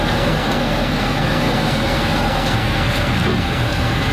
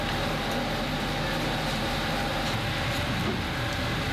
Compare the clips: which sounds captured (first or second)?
second